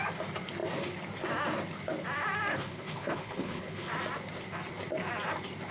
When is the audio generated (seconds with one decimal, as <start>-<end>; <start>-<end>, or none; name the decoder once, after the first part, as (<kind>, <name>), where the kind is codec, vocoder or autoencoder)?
2.5-3.9 (codec, HILCodec)